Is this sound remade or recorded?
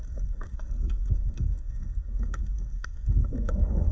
remade